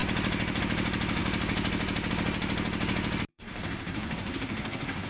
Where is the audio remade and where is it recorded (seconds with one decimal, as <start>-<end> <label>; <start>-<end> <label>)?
0.0-3.3 recorded; 3.3-5.1 remade